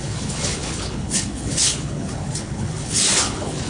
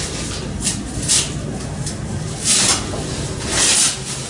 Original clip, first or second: second